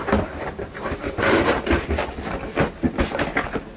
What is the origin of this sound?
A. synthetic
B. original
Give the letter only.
B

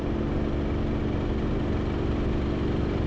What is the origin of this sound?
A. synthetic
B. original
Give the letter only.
B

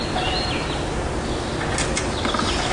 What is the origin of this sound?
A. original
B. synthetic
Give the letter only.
A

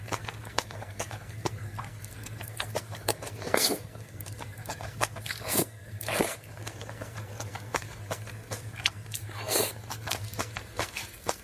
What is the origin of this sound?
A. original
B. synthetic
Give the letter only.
B